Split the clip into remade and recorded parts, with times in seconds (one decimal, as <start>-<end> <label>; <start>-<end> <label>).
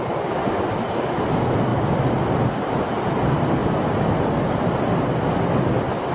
0.0-6.1 recorded